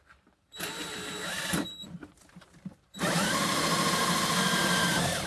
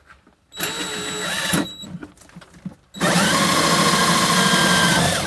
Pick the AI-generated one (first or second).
first